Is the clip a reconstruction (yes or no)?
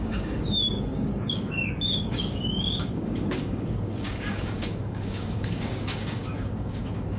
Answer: yes